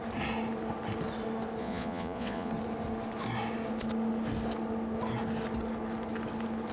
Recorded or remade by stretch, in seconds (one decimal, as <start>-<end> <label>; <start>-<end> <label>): 0.0-1.6 recorded; 1.6-2.5 remade; 2.5-6.7 recorded